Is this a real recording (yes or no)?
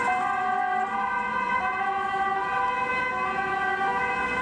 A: yes